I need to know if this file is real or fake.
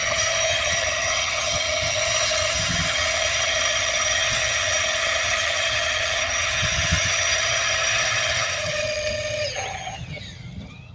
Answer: fake